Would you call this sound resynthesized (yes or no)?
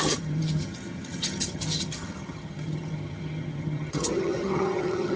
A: yes